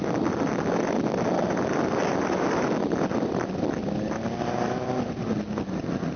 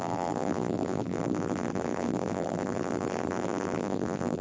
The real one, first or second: first